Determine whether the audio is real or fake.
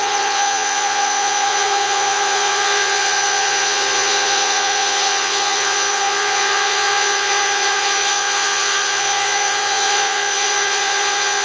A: fake